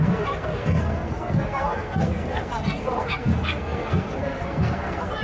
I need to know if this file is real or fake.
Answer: fake